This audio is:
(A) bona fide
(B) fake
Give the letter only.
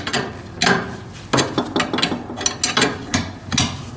A